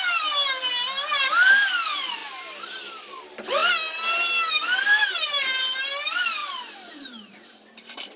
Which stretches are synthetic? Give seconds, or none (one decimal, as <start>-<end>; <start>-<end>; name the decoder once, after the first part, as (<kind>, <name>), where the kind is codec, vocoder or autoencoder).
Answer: 0.0-2.2 (vocoder, BigVGAN v2); 3.2-3.6; 4.5-8.2